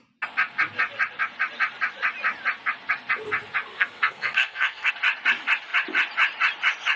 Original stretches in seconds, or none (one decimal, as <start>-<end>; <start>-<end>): 0.0-3.7; 4.9-7.0